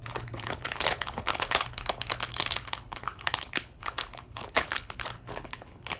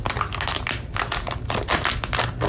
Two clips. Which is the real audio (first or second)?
second